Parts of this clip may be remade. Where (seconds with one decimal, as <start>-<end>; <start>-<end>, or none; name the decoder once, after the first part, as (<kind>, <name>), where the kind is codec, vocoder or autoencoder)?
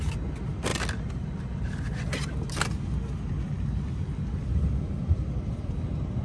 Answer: none